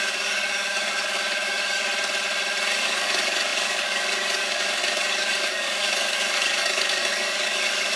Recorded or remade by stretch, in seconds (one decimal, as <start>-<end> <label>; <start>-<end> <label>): 0.0-1.9 remade; 1.9-2.8 recorded; 2.8-8.0 remade